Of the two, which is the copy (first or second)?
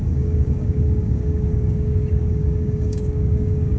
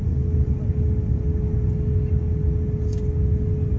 first